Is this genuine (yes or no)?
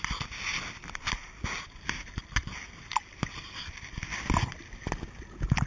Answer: yes